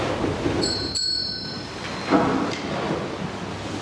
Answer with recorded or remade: recorded